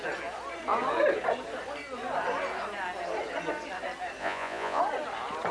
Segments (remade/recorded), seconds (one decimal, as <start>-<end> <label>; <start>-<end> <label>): 0.0-4.2 recorded; 4.2-4.8 remade; 4.8-5.5 recorded